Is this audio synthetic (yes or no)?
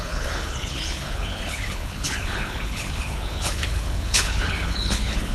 yes